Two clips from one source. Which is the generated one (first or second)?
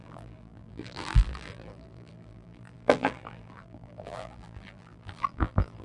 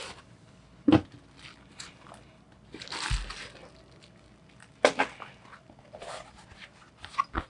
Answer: first